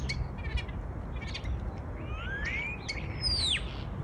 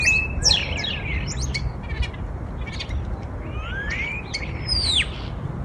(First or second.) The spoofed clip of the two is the second